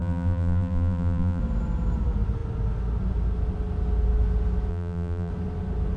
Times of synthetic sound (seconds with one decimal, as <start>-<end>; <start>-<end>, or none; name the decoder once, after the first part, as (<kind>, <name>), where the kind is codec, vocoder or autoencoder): 0.0-1.4 (vocoder, BigVGAN v2); 4.7-5.3